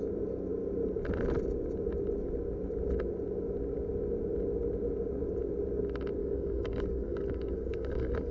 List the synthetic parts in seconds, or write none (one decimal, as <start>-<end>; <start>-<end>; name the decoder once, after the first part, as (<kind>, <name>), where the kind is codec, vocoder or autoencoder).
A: 6.2-8.3 (codec, DAC)